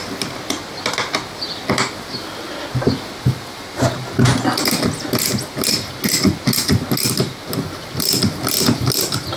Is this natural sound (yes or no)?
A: yes